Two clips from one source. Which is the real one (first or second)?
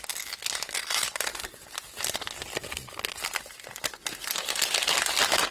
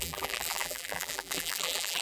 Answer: first